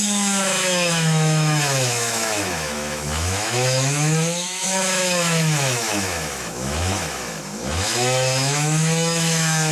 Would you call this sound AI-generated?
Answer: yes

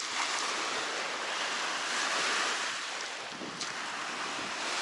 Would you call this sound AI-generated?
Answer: no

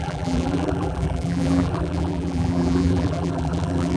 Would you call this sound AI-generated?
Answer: yes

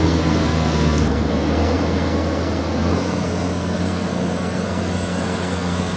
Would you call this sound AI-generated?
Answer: yes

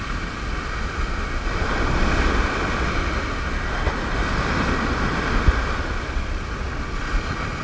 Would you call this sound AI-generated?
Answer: no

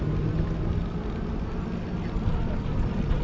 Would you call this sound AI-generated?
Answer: no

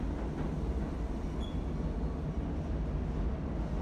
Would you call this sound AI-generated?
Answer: no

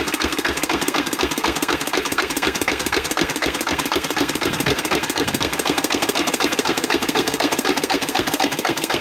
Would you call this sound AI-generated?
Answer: yes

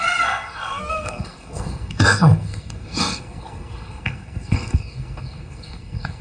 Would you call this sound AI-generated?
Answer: yes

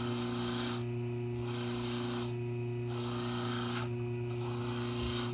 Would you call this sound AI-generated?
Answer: no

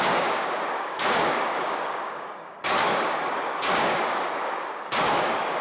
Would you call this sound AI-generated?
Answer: yes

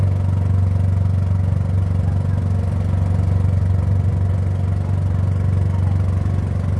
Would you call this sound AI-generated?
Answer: no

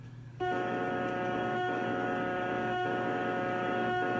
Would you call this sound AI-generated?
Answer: yes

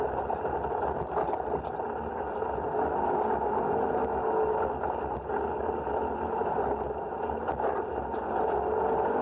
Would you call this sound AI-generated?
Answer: no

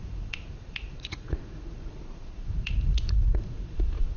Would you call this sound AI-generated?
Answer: yes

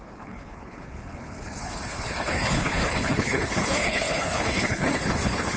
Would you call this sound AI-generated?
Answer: yes